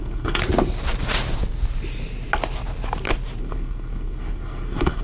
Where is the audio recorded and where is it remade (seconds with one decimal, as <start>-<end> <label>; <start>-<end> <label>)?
0.0-0.4 remade; 0.4-3.4 recorded; 3.4-5.0 remade

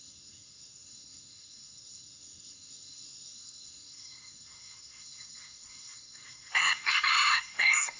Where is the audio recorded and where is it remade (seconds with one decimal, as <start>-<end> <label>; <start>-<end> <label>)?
0.0-8.0 remade

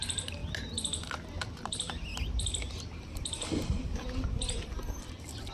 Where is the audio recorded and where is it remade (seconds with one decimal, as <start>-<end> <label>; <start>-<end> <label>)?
0.0-5.5 recorded